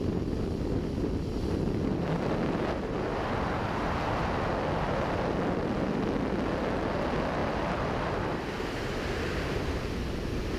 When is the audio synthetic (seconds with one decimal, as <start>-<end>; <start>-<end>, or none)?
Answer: none